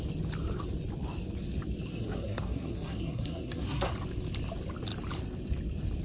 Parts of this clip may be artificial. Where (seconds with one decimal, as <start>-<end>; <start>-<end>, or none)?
1.9-3.9